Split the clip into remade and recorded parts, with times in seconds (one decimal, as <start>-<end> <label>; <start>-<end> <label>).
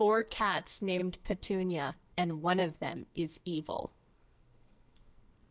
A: 0.0-5.5 remade